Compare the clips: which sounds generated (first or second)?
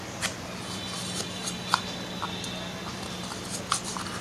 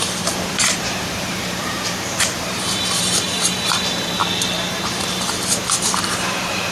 second